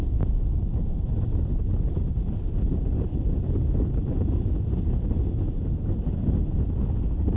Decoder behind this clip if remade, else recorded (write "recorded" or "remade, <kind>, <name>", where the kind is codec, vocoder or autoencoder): recorded